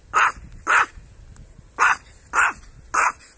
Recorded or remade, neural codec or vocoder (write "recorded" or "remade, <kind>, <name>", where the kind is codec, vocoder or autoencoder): recorded